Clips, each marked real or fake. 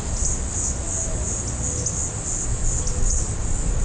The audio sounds real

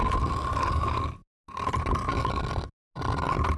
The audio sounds real